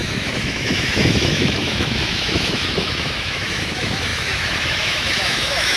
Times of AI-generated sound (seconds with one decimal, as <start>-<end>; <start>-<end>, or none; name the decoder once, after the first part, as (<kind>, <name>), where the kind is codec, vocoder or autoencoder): 0.0-5.8 (autoencoder, DAC-VAE)